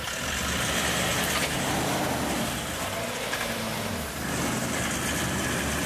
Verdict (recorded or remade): recorded